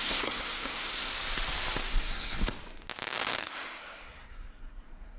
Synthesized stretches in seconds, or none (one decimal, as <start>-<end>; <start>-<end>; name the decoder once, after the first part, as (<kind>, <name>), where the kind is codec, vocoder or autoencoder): 0.0-1.1 (codec, SNAC); 1.9-2.4; 3.4-5.2